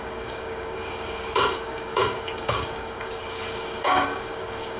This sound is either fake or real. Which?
fake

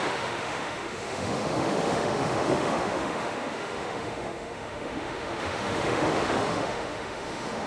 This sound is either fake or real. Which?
fake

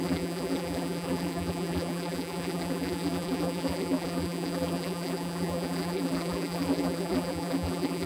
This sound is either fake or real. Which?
fake